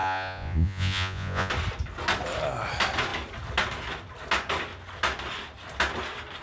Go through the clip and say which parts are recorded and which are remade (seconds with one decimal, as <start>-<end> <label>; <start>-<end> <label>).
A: 0.0-1.5 remade; 1.5-6.4 recorded